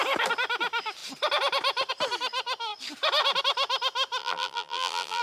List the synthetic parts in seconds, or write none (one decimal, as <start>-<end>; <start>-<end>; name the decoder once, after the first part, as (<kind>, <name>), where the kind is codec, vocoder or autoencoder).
4.2-5.2 (vocoder, BigVGAN v2)